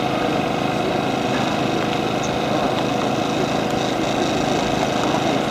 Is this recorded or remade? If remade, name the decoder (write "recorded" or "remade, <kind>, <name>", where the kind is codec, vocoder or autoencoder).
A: recorded